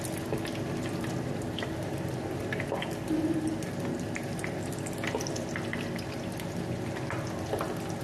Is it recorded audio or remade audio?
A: recorded